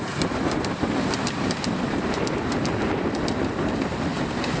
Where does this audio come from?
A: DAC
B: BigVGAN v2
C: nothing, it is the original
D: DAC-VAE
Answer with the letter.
B